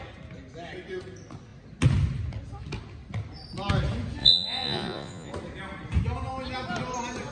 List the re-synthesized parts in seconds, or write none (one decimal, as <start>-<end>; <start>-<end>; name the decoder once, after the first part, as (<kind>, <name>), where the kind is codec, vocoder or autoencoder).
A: 4.2-5.3 (vocoder, Vocos)